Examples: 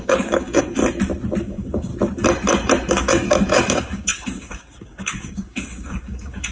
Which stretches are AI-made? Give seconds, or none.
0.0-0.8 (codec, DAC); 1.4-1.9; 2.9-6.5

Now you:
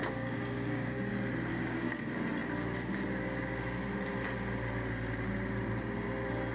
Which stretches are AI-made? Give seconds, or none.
0.0-1.1 (codec, DAC); 1.5-2.0